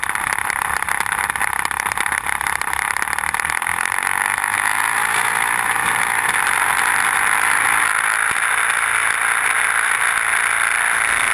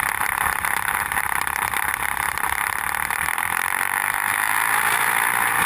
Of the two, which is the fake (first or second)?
second